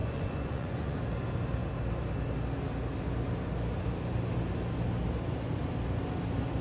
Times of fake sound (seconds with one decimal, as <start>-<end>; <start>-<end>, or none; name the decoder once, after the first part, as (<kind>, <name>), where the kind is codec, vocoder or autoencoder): 0.0-1.0 (vocoder, Vocos)

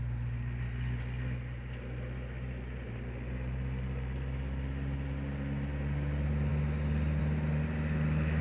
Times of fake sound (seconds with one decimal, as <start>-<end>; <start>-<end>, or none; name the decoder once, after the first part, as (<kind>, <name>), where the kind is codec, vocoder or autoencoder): none

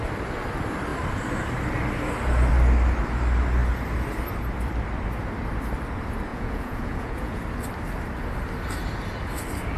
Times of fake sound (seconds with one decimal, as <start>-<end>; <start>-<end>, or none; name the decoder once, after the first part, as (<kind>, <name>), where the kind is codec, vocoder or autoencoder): 6.3-7.4 (vocoder, Vocos)

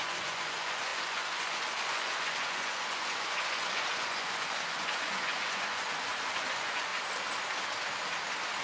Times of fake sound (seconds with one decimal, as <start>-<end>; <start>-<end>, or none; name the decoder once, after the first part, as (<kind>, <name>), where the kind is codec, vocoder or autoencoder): 0.0-6.9 (vocoder, Vocos)